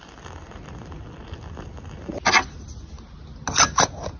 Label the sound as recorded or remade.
recorded